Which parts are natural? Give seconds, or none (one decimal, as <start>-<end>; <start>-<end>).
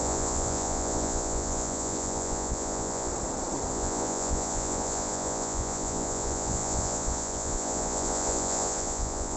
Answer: 3.1-3.7